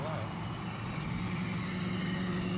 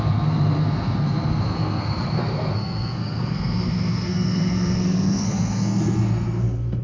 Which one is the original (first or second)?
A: first